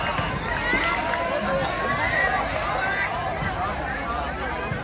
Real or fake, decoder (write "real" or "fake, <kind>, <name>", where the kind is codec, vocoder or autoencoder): real